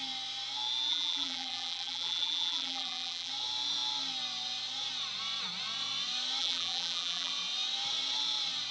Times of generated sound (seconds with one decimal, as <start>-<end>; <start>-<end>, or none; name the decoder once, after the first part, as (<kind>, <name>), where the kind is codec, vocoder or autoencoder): 0.9-3.3 (vocoder, BigVGAN v2); 6.4-7.3